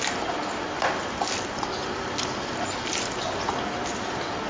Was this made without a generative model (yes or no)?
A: yes